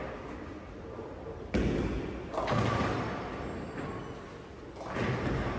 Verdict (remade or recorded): recorded